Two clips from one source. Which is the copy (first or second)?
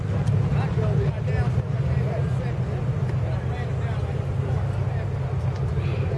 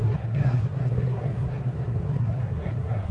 second